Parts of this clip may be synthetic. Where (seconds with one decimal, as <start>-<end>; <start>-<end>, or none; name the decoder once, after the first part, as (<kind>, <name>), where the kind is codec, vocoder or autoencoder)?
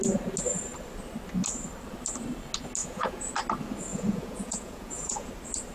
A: 2.8-3.3 (vocoder, Vocos); 3.9-5.3